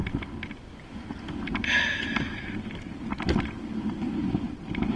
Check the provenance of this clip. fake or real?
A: real